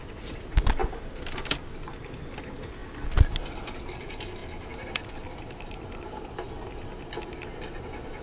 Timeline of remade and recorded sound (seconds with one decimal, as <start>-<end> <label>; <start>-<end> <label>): 0.0-8.2 recorded